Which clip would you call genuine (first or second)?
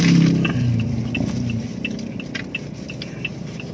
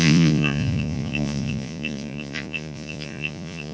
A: first